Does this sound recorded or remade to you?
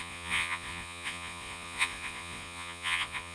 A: remade